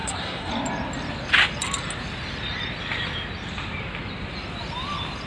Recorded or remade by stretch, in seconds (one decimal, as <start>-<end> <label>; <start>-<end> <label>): 0.0-0.5 remade; 0.5-5.3 recorded